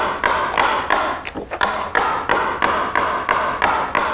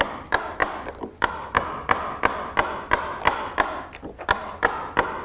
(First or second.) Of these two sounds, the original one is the first